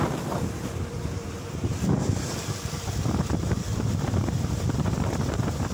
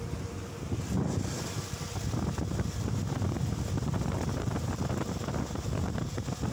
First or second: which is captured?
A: second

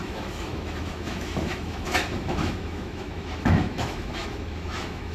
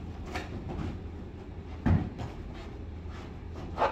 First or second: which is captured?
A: second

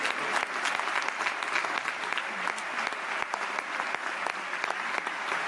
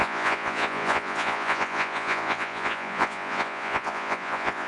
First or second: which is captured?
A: first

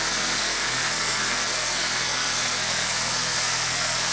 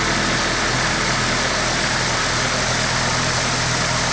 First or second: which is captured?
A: second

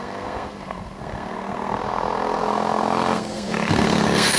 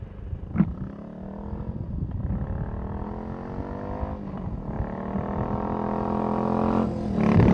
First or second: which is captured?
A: second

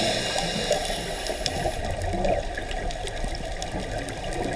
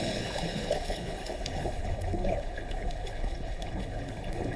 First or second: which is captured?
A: first